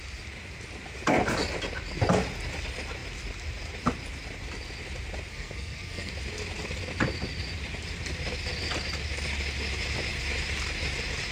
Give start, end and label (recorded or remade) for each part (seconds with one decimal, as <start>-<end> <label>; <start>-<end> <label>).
0.0-5.3 recorded; 5.3-6.1 remade; 6.1-11.3 recorded